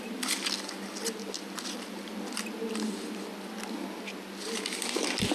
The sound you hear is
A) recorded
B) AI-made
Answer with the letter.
A